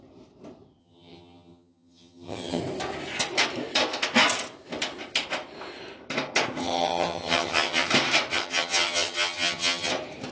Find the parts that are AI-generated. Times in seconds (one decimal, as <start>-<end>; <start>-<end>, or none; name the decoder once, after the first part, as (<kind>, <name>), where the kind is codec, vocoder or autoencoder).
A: 0.8-2.6 (vocoder, HiFi-GAN); 6.6-7.9; 8.3-9.9